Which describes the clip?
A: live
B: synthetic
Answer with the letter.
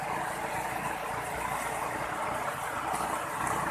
A